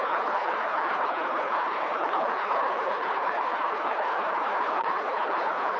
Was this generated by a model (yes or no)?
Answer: yes